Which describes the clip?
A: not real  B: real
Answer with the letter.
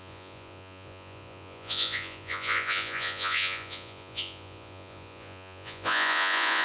A